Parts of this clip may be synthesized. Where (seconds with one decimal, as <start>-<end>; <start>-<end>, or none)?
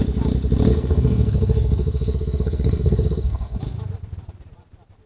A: 0.7-3.6